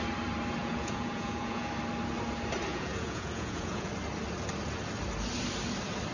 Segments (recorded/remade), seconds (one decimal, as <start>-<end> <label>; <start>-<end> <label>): 0.0-0.6 recorded; 0.6-1.7 remade; 1.7-2.7 recorded; 2.7-3.9 remade; 3.9-6.1 recorded